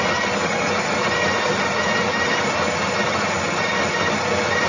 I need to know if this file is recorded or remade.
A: recorded